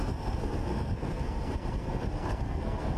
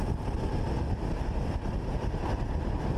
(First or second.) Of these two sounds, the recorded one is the second